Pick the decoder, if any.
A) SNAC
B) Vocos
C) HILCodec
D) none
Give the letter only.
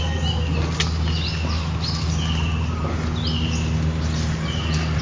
D